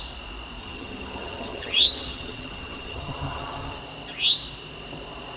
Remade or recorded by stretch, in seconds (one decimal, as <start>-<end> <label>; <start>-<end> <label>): 0.0-0.6 recorded; 0.6-3.8 remade; 3.8-5.4 recorded